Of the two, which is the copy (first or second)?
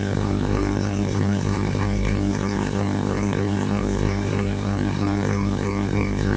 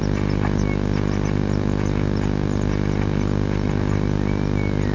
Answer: first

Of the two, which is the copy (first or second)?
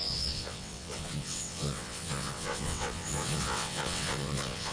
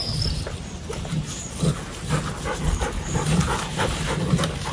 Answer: first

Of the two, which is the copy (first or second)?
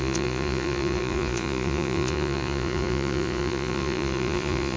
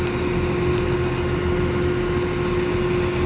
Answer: first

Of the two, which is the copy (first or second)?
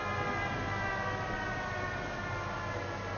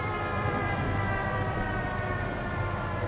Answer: second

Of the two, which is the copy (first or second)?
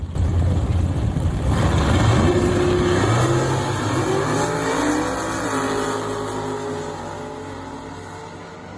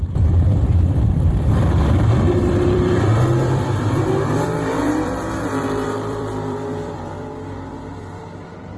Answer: second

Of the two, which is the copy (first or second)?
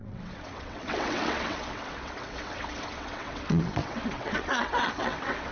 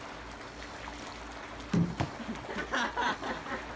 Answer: first